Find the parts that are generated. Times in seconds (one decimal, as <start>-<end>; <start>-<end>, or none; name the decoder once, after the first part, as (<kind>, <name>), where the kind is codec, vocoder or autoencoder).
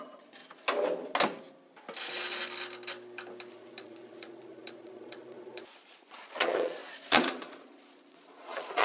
0.0-0.4 (vocoder, Vocos); 3.5-8.8